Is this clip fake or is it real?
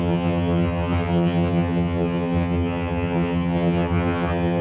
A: fake